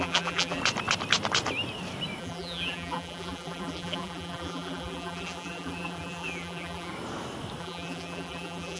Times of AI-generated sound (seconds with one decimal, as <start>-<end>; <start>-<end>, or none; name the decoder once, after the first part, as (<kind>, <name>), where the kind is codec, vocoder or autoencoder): 0.0-0.6 (vocoder, BigVGAN v2); 2.2-6.9; 7.6-8.8